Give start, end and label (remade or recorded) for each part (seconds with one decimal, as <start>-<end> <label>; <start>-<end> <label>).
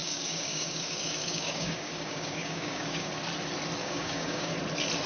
0.0-3.1 remade; 3.1-3.8 recorded; 3.8-4.5 remade; 4.5-5.1 recorded